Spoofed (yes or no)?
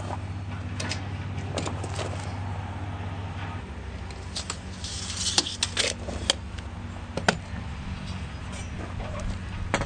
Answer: no